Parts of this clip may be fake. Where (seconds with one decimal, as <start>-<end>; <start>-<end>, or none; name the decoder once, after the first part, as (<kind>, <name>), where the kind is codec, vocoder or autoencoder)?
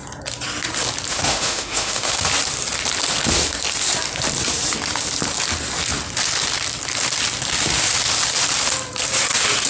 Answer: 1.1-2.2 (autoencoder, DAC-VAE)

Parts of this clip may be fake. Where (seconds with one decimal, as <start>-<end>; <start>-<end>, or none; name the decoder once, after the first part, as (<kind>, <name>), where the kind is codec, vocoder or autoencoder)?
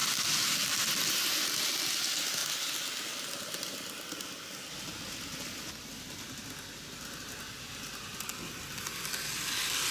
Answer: none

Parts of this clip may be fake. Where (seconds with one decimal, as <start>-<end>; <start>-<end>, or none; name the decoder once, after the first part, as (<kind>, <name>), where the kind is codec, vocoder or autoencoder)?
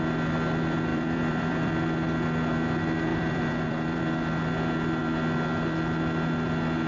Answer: 0.9-1.8 (vocoder, BigVGAN v2); 3.1-4.0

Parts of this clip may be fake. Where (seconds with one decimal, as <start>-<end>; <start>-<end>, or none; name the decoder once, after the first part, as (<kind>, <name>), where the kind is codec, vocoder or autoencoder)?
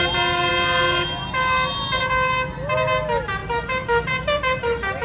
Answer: none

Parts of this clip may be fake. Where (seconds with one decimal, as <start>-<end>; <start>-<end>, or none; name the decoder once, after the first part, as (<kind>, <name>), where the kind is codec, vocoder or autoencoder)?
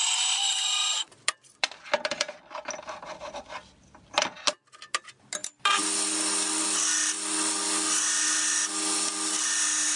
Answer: none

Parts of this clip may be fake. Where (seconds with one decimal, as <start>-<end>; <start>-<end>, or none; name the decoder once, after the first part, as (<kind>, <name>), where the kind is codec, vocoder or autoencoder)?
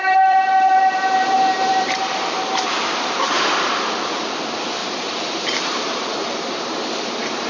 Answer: 0.0-3.4 (vocoder, BigVGAN v2); 4.8-7.5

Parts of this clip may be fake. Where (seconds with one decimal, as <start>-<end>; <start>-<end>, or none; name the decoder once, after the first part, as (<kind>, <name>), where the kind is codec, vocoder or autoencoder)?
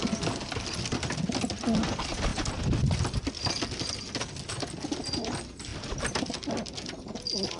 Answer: none